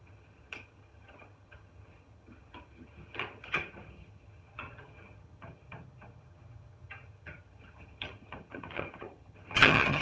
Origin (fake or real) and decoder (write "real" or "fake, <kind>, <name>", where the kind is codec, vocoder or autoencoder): fake, vocoder, HiFi-GAN